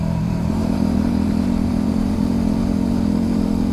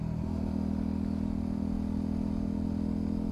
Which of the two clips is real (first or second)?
second